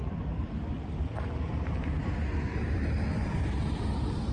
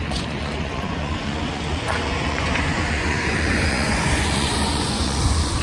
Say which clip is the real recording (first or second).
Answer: first